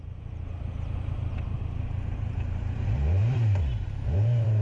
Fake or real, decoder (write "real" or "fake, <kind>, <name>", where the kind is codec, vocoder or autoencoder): fake, vocoder, BigVGAN v2